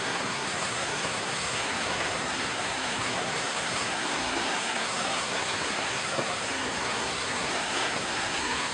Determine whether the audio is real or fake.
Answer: fake